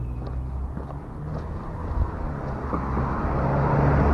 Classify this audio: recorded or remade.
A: recorded